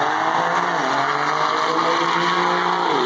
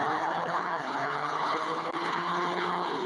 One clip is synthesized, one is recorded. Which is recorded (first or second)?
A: first